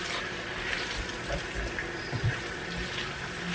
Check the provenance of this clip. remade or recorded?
recorded